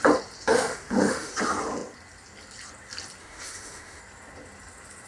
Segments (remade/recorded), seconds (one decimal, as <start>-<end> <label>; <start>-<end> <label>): 0.0-0.5 recorded; 0.5-1.3 remade; 1.3-3.2 recorded; 3.2-4.0 remade; 4.0-5.1 recorded